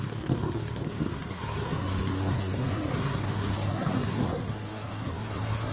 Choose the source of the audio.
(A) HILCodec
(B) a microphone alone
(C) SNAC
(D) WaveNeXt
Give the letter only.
C